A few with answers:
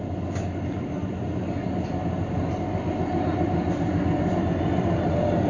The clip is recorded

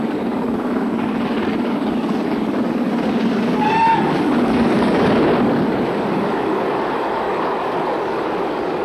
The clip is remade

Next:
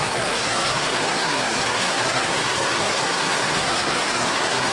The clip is remade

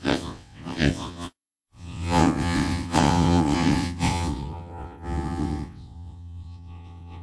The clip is remade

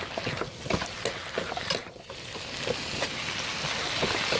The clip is recorded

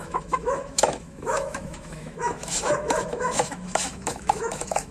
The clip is remade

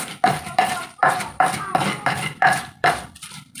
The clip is remade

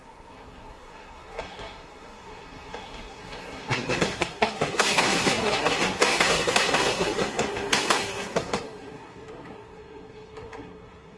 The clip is remade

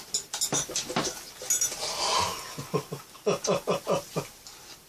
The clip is recorded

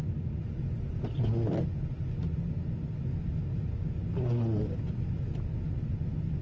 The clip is recorded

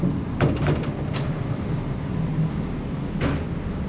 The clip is recorded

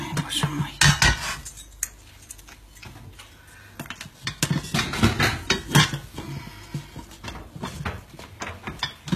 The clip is recorded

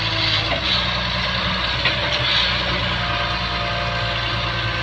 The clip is recorded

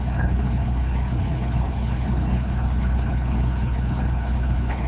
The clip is remade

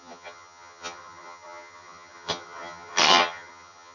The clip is remade